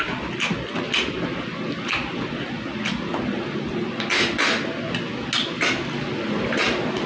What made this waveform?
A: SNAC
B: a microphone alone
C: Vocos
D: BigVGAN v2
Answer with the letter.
B